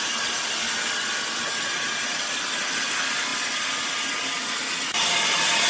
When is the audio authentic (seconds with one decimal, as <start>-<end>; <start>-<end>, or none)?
0.0-3.3; 4.4-5.7